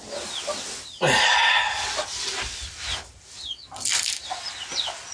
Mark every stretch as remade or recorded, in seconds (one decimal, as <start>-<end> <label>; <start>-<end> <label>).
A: 0.0-5.1 recorded